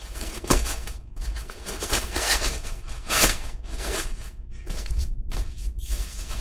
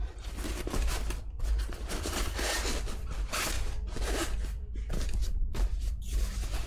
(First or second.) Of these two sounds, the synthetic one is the first